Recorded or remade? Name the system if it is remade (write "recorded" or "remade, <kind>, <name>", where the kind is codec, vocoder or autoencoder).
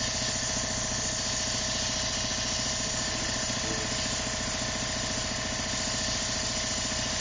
recorded